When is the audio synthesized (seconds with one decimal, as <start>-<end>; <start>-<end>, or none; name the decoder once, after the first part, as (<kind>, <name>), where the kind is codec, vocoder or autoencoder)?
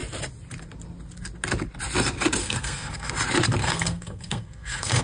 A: 2.4-3.1 (codec, SNAC); 3.6-5.0